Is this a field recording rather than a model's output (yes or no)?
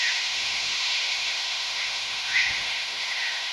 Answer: no